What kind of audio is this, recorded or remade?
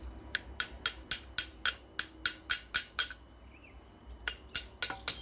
recorded